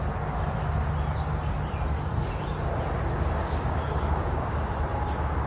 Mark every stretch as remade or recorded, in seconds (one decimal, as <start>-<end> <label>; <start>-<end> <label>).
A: 0.0-3.4 recorded; 3.4-4.7 remade; 4.7-5.5 recorded